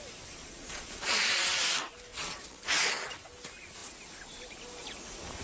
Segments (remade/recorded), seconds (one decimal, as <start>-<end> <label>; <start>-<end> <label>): 0.0-0.4 recorded; 0.4-1.4 remade; 1.4-2.1 recorded; 2.1-2.6 remade; 2.6-5.4 recorded